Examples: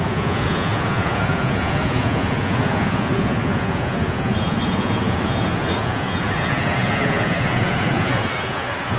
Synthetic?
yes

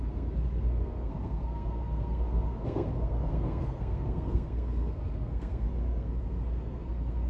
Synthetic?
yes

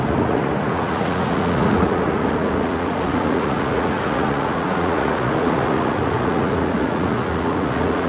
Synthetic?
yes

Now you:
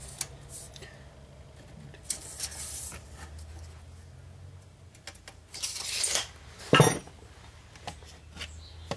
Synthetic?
no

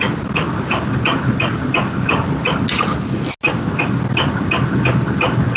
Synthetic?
no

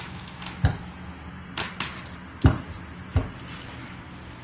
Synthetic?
no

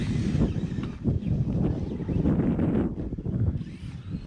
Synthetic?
no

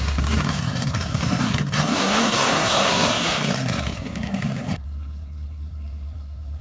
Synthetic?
yes